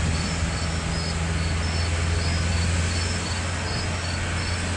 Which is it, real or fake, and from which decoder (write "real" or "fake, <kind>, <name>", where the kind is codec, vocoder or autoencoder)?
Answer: real